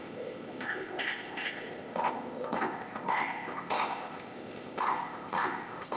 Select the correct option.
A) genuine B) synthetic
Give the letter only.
B